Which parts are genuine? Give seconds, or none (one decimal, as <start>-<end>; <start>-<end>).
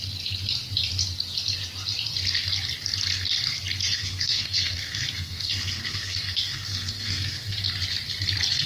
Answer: 0.0-3.8; 7.6-8.7